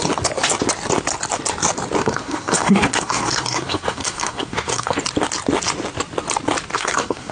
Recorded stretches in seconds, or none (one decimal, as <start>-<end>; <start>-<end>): 0.0-2.0; 5.0-6.7